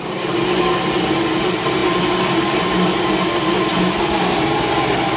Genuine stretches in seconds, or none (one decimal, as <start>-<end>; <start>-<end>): 0.0-5.2